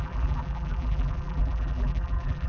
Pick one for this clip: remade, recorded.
remade